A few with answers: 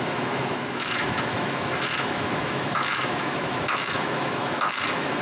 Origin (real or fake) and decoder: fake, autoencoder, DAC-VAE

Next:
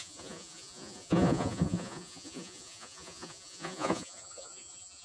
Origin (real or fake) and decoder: fake, vocoder, Vocos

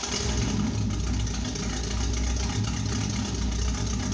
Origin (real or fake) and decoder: real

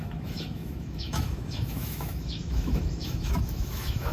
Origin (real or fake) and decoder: fake, autoencoder, DAC-VAE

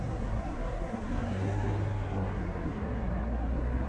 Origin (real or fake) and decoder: fake, codec, SNAC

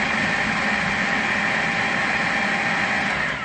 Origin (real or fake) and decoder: real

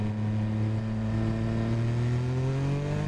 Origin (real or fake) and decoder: real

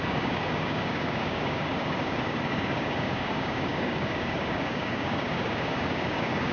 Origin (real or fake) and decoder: fake, codec, DAC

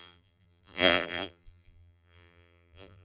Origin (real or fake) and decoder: fake, vocoder, BigVGAN v2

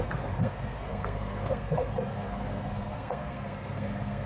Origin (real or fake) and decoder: fake, codec, SNAC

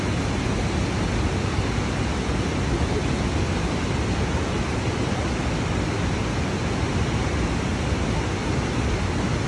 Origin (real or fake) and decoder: real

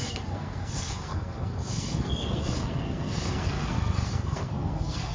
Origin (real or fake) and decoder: fake, codec, SNAC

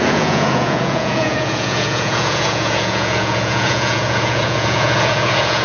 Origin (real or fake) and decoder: fake, vocoder, Vocos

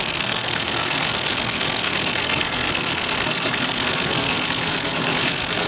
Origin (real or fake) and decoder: fake, codec, SNAC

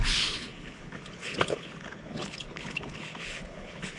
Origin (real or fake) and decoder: fake, codec, HILCodec